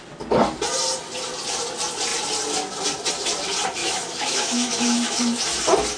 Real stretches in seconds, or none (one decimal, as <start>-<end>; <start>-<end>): 0.0-3.8; 5.4-6.0